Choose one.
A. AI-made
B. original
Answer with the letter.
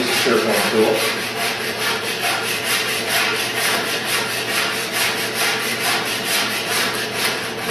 A